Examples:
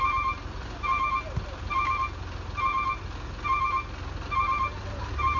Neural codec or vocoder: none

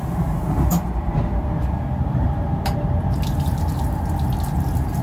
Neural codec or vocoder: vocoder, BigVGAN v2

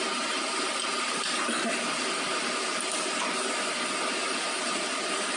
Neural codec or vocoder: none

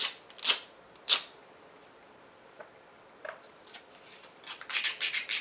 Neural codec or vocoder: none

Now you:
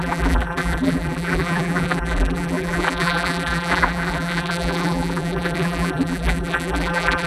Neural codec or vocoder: vocoder, BigVGAN v2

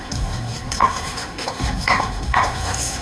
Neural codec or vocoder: codec, SNAC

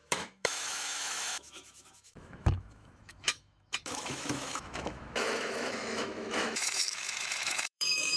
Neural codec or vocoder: autoencoder, DAC-VAE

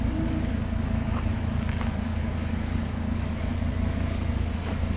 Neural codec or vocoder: codec, DAC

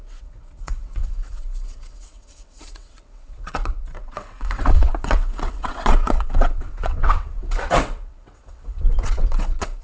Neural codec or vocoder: vocoder, WaveNeXt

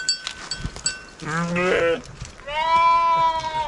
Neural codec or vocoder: none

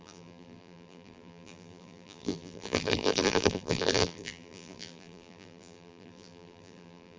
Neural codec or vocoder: vocoder, BigVGAN v2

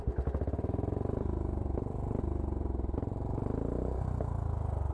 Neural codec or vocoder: vocoder, BigVGAN v2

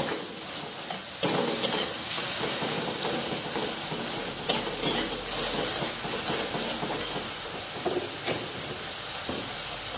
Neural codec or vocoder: none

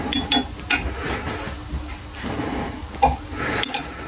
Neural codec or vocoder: none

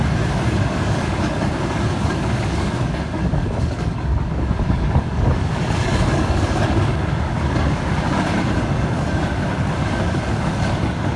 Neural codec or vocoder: codec, DAC